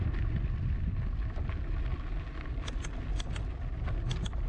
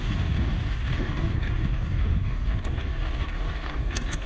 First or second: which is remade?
second